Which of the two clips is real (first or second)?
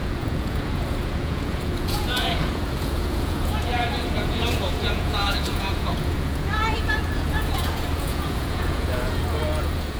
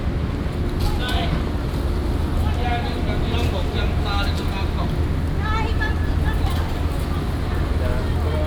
second